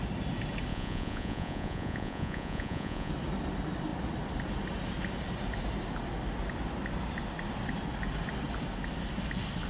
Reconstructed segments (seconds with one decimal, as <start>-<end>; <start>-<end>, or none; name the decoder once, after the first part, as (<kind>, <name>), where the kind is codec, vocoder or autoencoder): 0.7-3.1 (vocoder, Vocos)